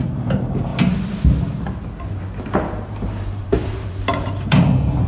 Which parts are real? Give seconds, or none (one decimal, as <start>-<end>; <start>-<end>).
0.7-2.1